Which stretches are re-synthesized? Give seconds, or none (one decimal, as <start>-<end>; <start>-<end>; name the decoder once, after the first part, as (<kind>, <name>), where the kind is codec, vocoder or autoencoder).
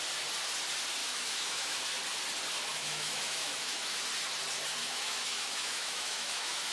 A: 1.0-1.8 (autoencoder, DAC-VAE); 2.7-4.0; 4.8-6.7